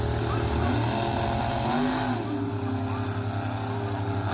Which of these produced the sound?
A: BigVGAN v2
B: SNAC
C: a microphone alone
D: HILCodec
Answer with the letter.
C